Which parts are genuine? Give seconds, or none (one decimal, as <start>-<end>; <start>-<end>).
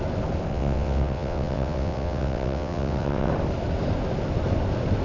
0.0-0.5; 3.3-5.0